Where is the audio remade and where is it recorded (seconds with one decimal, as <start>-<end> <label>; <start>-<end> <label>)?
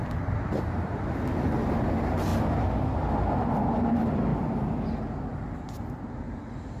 0.0-1.2 remade; 1.2-6.8 recorded